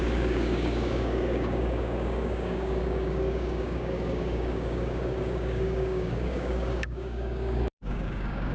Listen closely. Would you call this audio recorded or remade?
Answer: remade